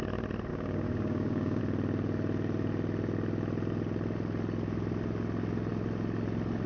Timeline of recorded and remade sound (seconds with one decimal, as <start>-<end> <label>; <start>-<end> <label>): 0.0-0.5 recorded; 0.5-1.6 remade; 1.6-6.7 recorded